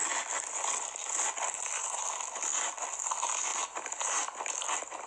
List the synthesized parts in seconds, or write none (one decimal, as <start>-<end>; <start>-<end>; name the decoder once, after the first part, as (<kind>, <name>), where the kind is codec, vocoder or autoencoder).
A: 3.5-4.0 (vocoder, BigVGAN v2)